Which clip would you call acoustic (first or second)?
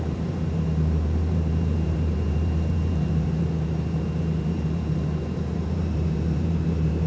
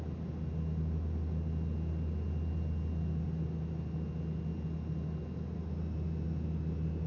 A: second